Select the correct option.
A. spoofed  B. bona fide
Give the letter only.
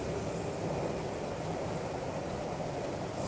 B